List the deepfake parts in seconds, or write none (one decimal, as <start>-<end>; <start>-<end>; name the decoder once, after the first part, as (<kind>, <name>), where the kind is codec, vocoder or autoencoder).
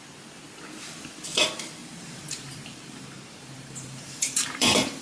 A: 1.8-5.0 (vocoder, BigVGAN v2)